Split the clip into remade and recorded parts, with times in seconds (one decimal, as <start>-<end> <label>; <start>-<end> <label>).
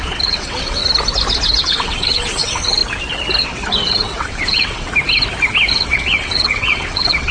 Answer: 0.0-0.8 remade; 0.8-1.6 recorded; 1.6-2.8 remade; 2.8-3.4 recorded; 3.4-4.9 remade; 4.9-5.7 recorded; 5.7-7.3 remade